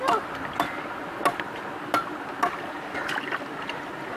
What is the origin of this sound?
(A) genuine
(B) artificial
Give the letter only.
A